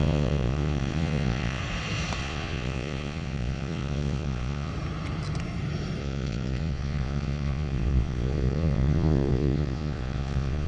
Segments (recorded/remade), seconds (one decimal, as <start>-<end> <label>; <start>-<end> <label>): 0.0-1.6 remade; 1.6-2.2 recorded; 2.2-4.7 remade; 4.7-6.0 recorded; 6.0-10.7 remade